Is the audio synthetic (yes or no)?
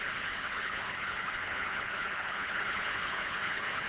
yes